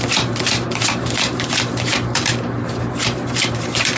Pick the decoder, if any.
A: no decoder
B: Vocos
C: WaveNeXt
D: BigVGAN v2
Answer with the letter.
D